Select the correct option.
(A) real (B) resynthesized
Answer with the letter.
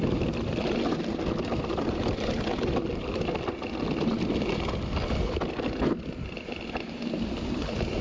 A